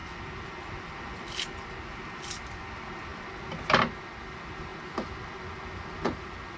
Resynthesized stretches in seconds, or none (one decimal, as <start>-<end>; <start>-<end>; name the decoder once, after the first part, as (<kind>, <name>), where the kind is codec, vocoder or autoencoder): 0.0-1.7 (vocoder, BigVGAN v2)